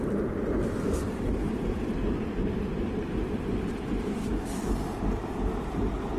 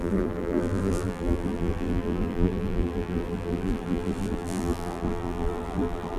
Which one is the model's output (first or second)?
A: second